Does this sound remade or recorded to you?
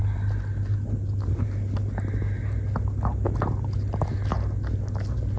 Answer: recorded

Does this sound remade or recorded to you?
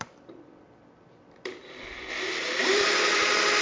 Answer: remade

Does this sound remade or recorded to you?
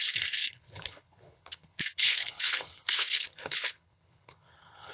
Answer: remade